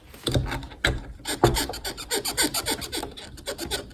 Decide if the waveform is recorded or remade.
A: recorded